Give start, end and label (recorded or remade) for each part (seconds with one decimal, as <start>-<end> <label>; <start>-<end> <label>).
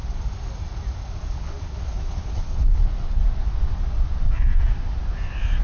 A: 0.0-1.3 recorded; 1.3-3.2 remade; 3.2-5.6 recorded